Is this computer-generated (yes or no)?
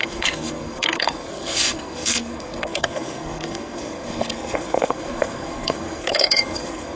yes